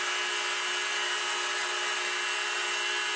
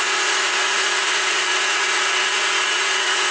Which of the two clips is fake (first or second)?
second